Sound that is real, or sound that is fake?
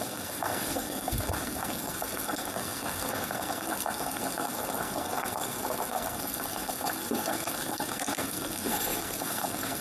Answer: fake